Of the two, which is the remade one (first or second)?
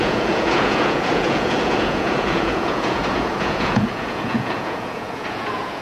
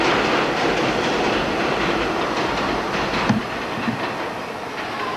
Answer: first